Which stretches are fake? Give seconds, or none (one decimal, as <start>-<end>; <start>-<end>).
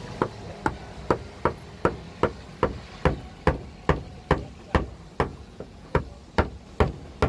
5.3-6.0